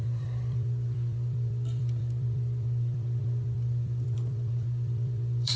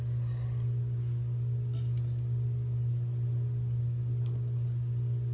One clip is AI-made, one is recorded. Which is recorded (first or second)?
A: second